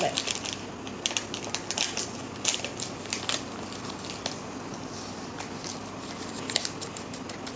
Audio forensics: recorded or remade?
recorded